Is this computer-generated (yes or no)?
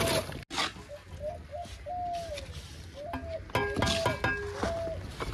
no